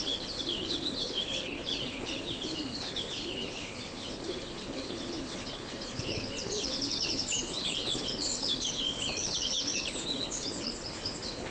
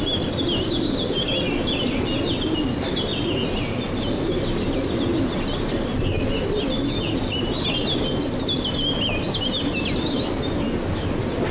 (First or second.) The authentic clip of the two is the second